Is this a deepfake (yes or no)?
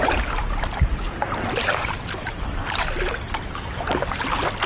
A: no